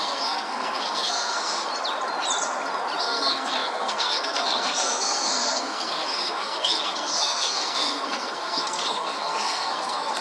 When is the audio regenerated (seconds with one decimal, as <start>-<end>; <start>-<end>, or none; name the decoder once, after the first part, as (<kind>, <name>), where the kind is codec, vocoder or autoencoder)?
0.0-1.7 (codec, SNAC); 3.0-10.2